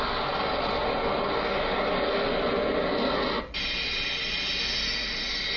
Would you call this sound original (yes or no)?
yes